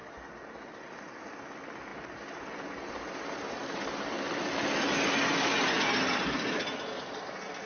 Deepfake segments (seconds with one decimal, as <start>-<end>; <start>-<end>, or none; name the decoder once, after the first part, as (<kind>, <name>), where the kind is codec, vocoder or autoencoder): none